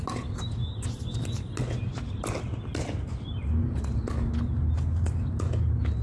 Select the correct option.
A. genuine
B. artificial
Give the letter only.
A